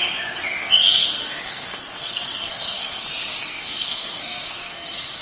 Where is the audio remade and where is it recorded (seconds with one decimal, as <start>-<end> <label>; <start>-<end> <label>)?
0.0-0.6 recorded; 0.6-3.0 remade; 3.0-3.4 recorded; 3.4-5.2 remade